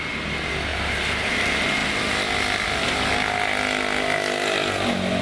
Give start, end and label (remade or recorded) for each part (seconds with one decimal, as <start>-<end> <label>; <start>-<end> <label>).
0.0-0.7 recorded; 0.7-1.3 remade; 1.3-5.2 recorded